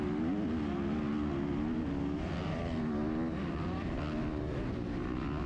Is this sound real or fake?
real